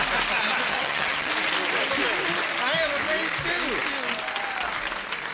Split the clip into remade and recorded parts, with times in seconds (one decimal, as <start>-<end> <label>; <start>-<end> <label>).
0.0-0.7 recorded; 0.7-1.3 remade; 1.3-5.3 recorded